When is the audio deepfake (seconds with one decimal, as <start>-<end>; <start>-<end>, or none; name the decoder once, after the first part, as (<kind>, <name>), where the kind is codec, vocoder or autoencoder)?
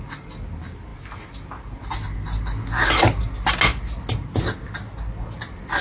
none